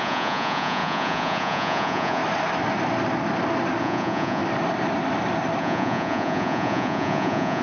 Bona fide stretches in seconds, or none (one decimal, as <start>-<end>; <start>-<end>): 2.2-3.8; 4.4-5.6